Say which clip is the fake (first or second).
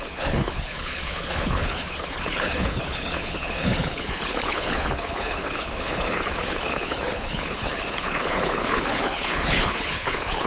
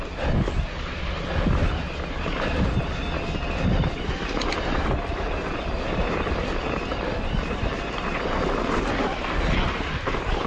first